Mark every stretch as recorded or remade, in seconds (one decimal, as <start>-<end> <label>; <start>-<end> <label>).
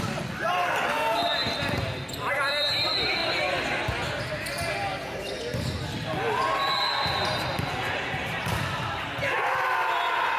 0.0-7.9 recorded; 7.9-9.2 remade; 9.2-10.4 recorded